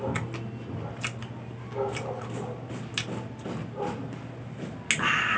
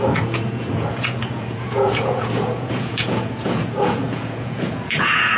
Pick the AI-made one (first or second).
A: second